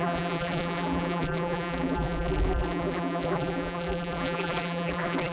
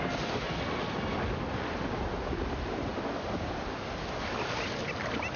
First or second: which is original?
second